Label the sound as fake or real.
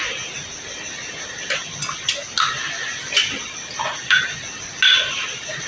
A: real